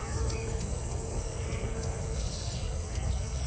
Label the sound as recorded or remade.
remade